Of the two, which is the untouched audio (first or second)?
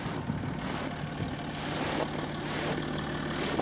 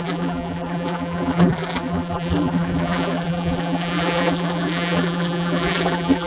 first